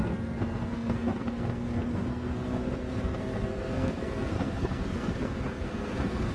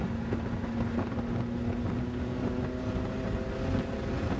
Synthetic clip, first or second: first